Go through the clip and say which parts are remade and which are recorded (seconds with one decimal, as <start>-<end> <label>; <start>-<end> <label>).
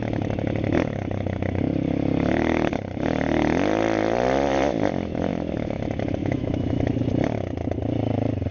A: 0.0-5.3 recorded; 5.3-5.8 remade; 5.8-6.2 recorded; 6.2-7.0 remade; 7.0-8.5 recorded